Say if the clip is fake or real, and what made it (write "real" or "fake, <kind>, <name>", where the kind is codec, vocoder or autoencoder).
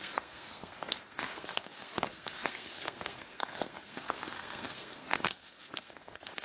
fake, codec, SNAC